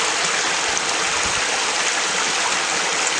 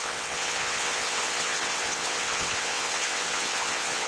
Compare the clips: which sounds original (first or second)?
first